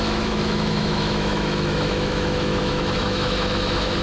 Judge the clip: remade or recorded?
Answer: remade